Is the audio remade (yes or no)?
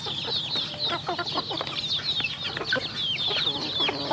no